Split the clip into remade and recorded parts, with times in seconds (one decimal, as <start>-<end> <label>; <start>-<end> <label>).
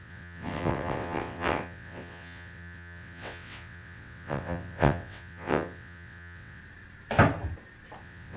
0.0-6.6 remade; 6.6-8.0 recorded; 8.0-8.4 remade